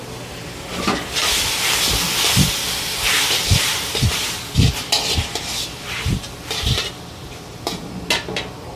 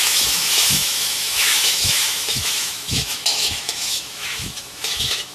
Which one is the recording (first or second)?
first